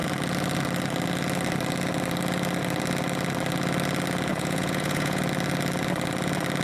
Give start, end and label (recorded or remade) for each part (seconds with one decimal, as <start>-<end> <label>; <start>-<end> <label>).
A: 0.0-4.3 recorded; 4.3-5.2 remade; 5.2-6.6 recorded